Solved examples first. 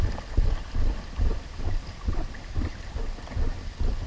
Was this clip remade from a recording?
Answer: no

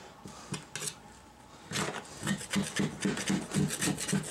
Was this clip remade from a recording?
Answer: no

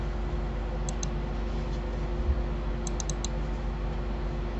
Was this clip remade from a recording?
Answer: no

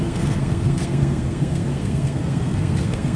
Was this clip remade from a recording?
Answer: yes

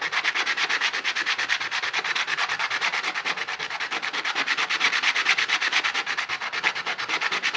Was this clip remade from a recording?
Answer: no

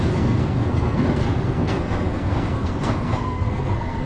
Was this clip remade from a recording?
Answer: yes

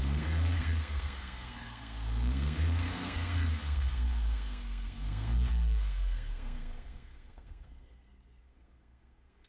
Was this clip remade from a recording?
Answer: yes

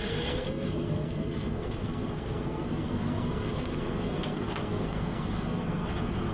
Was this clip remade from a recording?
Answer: yes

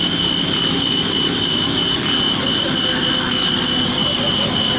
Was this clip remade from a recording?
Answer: no